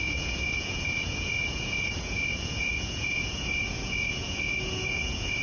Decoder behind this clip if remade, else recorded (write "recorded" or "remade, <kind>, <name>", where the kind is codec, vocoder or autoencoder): remade, vocoder, Vocos